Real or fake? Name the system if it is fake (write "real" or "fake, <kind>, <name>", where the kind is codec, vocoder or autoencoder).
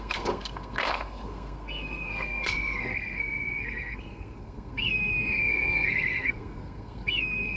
fake, codec, SNAC